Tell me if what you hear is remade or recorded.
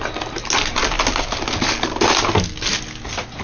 recorded